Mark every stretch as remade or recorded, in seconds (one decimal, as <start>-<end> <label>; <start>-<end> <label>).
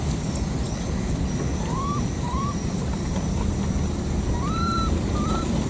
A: 0.0-1.5 recorded; 1.5-3.6 remade; 3.6-5.7 recorded